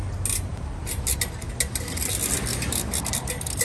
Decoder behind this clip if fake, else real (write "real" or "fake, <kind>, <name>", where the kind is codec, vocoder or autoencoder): real